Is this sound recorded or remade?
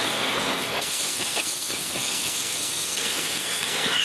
remade